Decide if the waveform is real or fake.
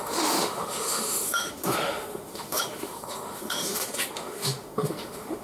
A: fake